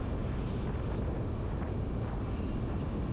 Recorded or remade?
recorded